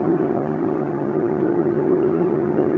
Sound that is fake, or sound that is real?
fake